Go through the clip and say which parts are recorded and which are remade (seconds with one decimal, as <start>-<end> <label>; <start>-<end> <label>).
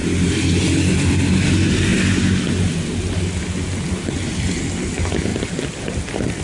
0.0-6.4 recorded